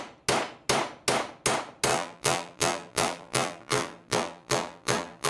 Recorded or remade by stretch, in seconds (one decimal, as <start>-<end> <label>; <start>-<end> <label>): 0.0-1.9 recorded; 1.9-5.3 remade